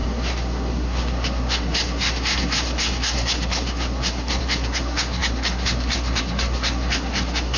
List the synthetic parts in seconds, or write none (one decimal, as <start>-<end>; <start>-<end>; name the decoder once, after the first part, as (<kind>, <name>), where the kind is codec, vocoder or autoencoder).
0.0-7.6 (codec, SNAC)